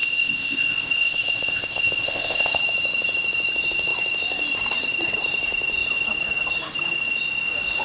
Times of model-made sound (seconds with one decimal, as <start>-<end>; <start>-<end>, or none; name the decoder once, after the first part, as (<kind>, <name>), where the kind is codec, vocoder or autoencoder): 0.0-2.6 (codec, ZipCodec)